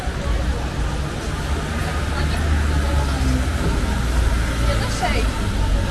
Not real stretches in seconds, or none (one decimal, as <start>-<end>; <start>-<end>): none